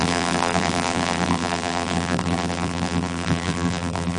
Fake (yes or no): yes